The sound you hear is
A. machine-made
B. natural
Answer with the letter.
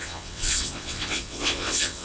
A